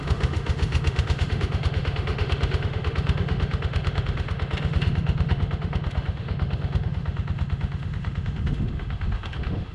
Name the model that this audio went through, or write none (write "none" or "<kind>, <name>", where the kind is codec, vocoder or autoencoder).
autoencoder, DAC-VAE